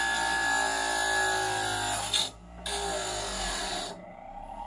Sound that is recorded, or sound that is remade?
recorded